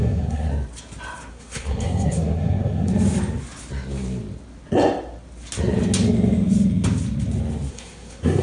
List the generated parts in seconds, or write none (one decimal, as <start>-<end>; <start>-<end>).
0.0-0.5; 1.3-2.9; 7.7-8.4